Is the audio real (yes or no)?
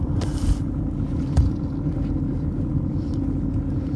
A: yes